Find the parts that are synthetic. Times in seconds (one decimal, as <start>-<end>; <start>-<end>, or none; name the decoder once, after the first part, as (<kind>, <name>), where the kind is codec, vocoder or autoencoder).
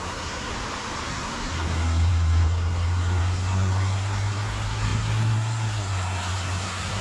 0.0-0.5 (codec, SNAC); 1.1-7.0